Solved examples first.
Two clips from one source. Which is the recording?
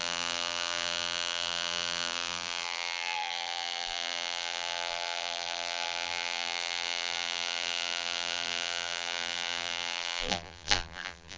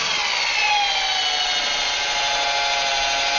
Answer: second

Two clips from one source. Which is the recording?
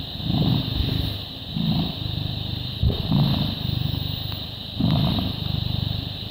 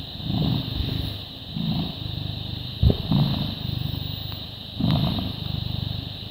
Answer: second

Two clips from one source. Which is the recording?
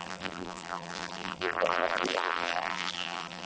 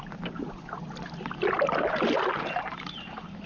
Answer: second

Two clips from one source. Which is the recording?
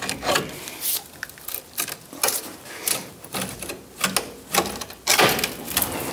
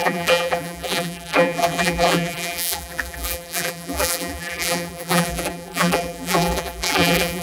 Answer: first